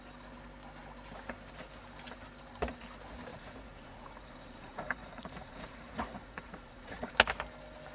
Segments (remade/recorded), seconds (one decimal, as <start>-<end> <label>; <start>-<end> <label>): 0.0-3.3 recorded; 3.3-7.1 remade; 7.1-7.9 recorded